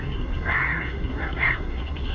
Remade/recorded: remade